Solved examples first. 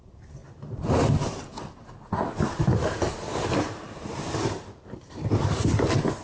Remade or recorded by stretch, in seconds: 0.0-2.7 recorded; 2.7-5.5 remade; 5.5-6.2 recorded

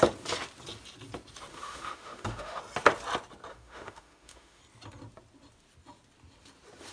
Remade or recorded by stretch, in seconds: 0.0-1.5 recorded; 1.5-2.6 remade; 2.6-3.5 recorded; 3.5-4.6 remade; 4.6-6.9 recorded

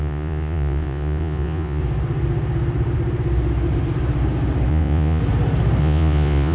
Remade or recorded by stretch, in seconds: 0.0-1.8 remade; 1.8-4.7 recorded; 4.7-5.2 remade; 5.2-5.8 recorded; 5.8-6.5 remade

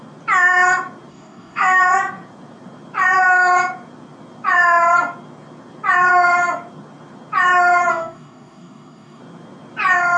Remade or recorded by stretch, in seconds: 0.0-1.1 recorded; 1.1-1.8 remade; 1.8-7.9 recorded; 7.9-9.2 remade; 9.2-10.2 recorded